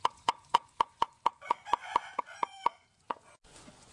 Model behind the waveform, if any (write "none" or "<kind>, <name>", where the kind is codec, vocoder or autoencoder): vocoder, Vocos